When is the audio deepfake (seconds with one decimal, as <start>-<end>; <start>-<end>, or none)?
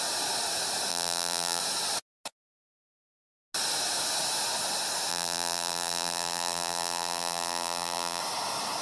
0.9-1.6; 5.1-8.2